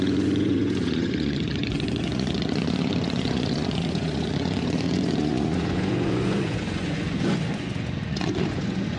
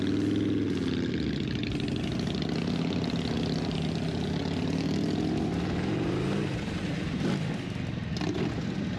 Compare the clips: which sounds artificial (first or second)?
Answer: first